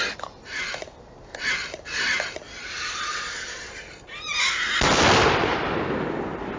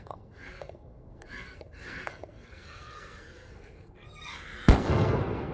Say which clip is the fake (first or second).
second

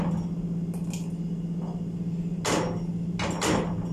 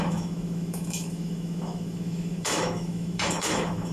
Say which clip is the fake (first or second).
second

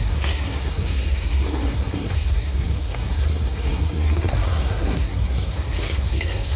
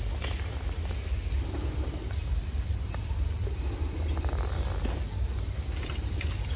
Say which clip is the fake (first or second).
first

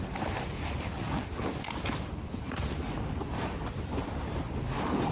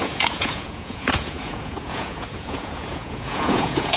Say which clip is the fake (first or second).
second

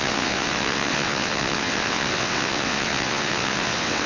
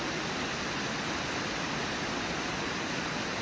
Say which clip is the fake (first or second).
first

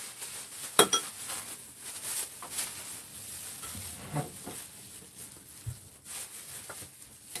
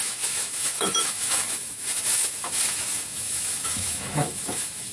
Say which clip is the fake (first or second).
second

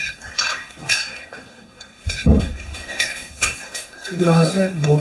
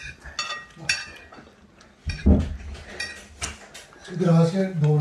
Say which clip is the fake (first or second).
first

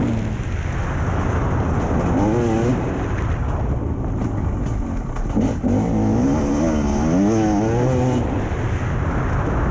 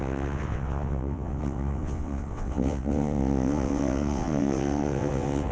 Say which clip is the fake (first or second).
second